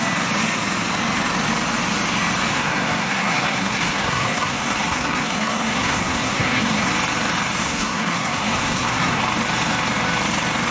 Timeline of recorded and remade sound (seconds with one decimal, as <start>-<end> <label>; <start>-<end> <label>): 0.0-2.5 recorded; 2.5-6.9 remade; 6.9-7.6 recorded; 7.6-9.2 remade; 9.2-10.7 recorded